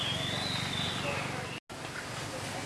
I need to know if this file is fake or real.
real